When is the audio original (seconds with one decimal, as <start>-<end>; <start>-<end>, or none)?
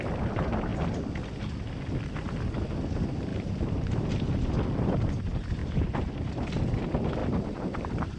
0.0-3.3; 4.1-5.6; 6.1-7.2